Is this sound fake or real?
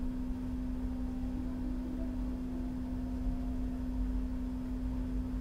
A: real